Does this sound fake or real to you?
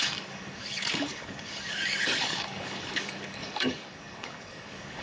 fake